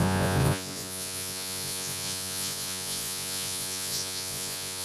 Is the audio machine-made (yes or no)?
yes